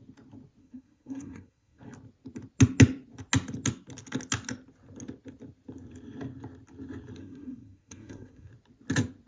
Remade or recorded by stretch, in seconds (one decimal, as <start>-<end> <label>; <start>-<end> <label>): 0.0-0.6 recorded; 0.6-1.8 remade; 1.8-7.2 recorded; 7.2-8.5 remade; 8.5-9.3 recorded

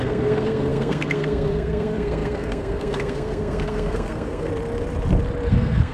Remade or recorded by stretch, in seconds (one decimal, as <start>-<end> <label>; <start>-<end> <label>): 0.0-4.5 remade; 4.5-5.5 recorded; 5.5-5.9 remade

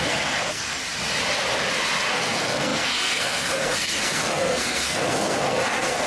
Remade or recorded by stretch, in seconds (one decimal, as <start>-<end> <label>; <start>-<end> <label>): 0.0-0.8 remade; 0.8-2.1 recorded; 2.1-6.1 remade

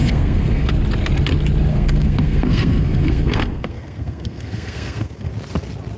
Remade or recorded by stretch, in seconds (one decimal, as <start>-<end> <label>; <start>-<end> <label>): 0.0-0.7 remade; 0.7-1.7 recorded; 1.7-5.3 remade; 5.3-6.0 recorded

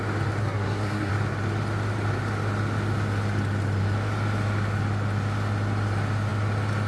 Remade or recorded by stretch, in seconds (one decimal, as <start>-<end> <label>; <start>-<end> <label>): 0.0-0.4 recorded; 0.4-1.1 remade; 1.1-6.9 recorded

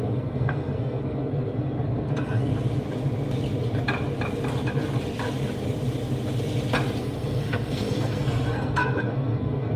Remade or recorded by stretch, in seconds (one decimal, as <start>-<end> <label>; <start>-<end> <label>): 0.0-2.5 remade; 2.5-7.0 recorded; 7.0-9.8 remade